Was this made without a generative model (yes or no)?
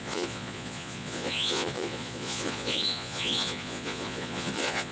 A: no